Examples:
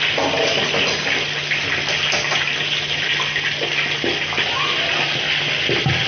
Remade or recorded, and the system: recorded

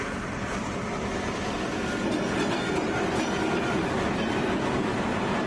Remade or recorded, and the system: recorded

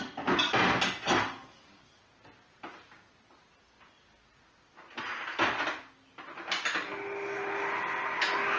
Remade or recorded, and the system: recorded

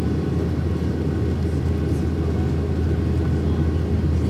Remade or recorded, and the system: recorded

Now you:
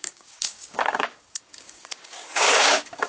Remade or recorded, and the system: remade, codec, DAC